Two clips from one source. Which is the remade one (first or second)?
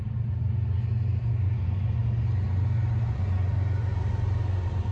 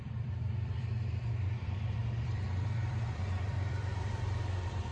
second